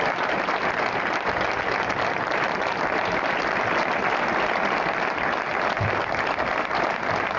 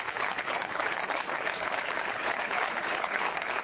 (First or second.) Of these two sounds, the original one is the first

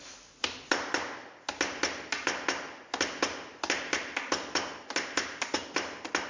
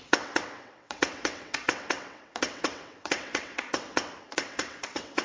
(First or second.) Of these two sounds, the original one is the first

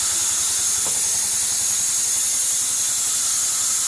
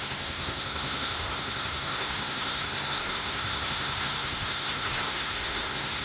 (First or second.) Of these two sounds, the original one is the first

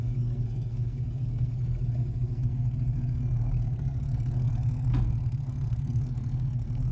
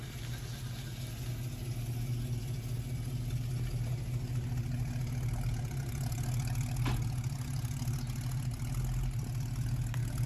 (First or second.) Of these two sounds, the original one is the second